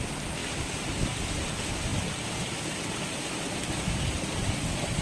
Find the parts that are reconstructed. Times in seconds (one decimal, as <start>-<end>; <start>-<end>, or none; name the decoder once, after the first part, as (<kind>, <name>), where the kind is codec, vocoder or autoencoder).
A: none